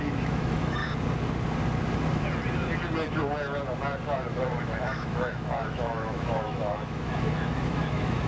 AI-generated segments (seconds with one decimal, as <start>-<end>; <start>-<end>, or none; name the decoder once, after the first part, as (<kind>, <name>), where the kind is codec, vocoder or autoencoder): 0.0-0.8 (autoencoder, DAC-VAE); 4.3-8.3